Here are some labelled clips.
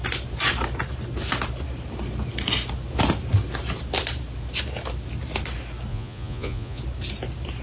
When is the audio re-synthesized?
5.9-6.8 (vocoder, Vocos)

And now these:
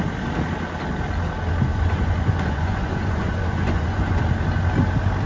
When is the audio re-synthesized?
1.7-4.2 (vocoder, Vocos)

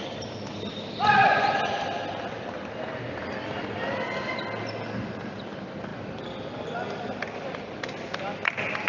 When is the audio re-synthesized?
none